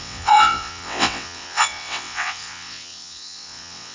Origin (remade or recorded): remade